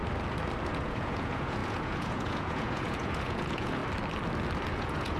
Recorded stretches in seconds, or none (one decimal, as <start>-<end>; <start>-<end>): 0.0-0.8; 3.8-4.7